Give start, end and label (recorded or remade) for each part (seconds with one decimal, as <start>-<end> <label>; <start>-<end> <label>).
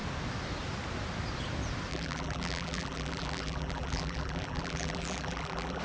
0.0-1.9 recorded; 1.9-5.8 remade